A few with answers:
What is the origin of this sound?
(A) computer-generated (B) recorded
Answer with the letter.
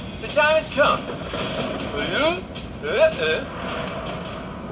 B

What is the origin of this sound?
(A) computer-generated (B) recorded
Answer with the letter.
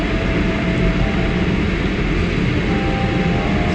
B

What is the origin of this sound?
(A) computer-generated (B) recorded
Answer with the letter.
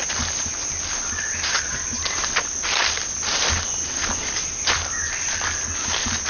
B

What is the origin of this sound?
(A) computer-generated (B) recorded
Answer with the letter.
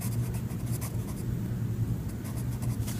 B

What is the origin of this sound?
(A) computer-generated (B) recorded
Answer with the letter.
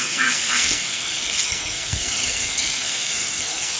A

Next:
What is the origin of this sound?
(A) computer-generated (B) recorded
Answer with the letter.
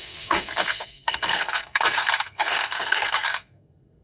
A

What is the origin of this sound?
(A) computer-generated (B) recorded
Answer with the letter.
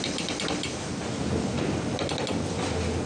B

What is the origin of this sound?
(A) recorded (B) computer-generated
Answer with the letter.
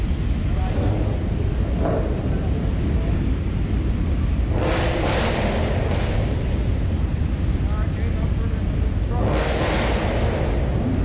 A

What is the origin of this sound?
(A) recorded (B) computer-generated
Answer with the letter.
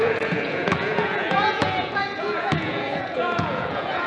B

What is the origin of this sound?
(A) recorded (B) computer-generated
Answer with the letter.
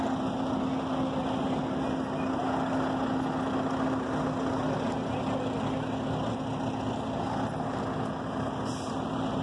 A